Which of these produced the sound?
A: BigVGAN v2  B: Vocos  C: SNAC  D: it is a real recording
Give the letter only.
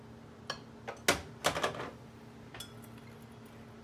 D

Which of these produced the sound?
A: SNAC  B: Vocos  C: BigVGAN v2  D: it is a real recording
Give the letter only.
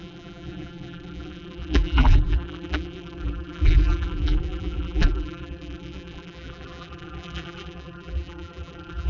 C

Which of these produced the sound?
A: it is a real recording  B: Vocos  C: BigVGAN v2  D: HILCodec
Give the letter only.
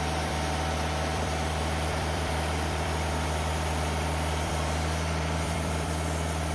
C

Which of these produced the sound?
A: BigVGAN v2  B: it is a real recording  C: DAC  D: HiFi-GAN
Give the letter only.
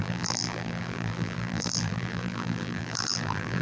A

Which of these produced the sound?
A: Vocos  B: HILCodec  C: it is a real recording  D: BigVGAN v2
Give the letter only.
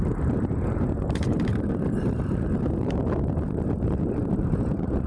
D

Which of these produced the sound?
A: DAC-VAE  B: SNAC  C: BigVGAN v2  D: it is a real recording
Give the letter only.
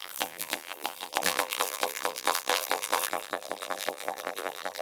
C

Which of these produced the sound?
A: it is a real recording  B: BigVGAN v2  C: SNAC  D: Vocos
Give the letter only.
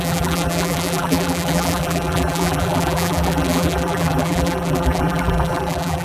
B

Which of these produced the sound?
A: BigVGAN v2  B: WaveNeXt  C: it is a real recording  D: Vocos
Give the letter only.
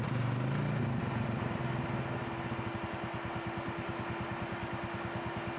C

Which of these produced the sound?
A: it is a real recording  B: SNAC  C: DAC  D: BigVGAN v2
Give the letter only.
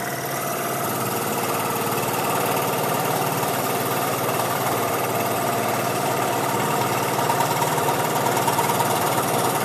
D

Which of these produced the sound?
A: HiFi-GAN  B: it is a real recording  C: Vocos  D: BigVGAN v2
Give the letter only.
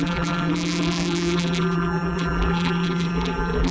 D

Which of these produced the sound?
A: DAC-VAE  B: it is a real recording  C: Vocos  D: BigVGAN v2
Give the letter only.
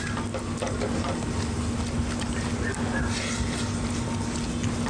B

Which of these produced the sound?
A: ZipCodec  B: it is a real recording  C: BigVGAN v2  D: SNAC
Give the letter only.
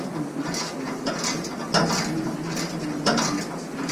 B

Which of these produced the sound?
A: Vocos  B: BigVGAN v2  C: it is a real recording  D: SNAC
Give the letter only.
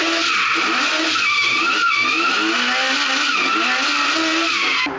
C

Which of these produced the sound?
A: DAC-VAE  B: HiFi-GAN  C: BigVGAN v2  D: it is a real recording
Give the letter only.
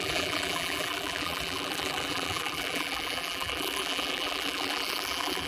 C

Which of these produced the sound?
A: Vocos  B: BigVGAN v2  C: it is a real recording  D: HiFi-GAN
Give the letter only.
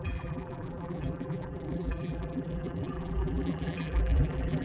B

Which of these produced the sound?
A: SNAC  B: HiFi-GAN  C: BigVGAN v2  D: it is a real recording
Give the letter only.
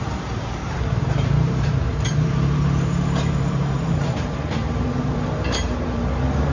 C